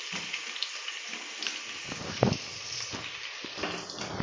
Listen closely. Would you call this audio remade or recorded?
recorded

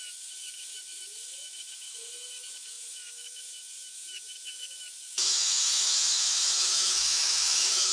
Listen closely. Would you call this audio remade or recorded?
remade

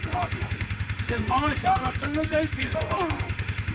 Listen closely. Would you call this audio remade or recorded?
remade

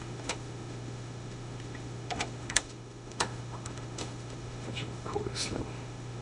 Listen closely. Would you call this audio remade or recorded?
remade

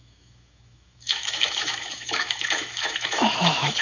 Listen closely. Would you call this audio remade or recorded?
remade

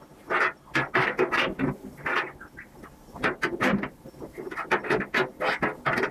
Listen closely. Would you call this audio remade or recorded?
recorded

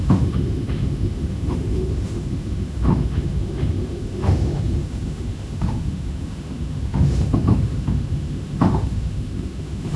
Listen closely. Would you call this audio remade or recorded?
remade